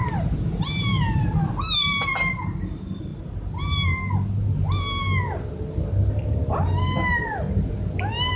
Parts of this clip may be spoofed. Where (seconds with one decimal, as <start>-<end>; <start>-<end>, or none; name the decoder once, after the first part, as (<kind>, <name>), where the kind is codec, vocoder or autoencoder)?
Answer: 0.0-1.3 (vocoder, BigVGAN v2)